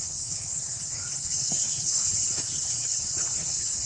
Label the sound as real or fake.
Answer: fake